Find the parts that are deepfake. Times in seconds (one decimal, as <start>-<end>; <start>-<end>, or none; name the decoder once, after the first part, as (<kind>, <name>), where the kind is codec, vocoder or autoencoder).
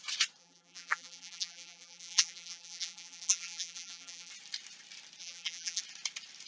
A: 0.4-4.3 (vocoder, BigVGAN v2); 5.2-5.8